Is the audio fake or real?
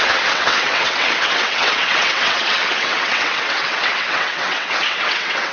fake